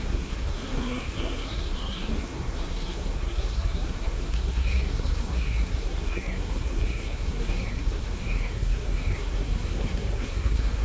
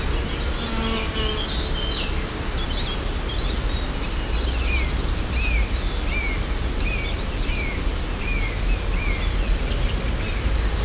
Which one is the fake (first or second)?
first